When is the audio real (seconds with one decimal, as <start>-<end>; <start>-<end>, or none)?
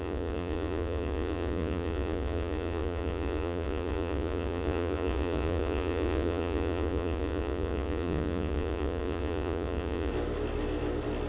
10.1-11.3